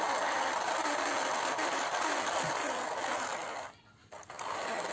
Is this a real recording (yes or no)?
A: yes